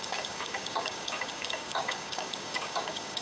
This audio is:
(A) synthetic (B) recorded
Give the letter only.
A